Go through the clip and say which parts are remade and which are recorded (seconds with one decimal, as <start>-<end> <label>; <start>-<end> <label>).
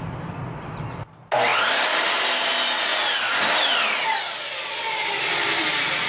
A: 0.0-6.1 recorded